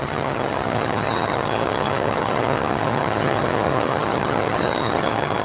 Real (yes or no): no